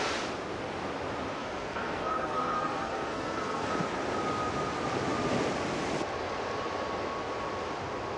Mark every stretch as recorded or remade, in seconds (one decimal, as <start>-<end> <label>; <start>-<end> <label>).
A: 0.0-1.4 recorded; 1.4-3.7 remade; 3.7-8.2 recorded